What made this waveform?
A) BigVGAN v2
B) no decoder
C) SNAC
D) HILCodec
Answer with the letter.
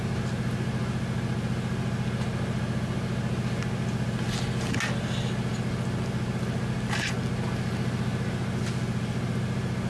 B